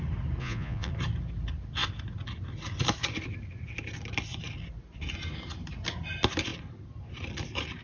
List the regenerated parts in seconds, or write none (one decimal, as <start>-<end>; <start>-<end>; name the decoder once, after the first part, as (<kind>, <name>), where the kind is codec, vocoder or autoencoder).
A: 0.4-0.9 (vocoder, Vocos)